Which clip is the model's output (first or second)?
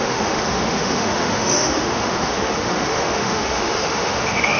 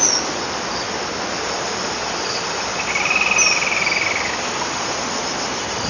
first